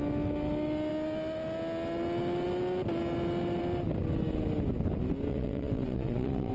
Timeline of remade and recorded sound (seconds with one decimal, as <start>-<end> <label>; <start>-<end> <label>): 0.0-5.3 recorded; 5.3-6.5 remade